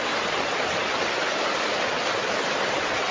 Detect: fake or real real